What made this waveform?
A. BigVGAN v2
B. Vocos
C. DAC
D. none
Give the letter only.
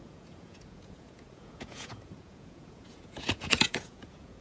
B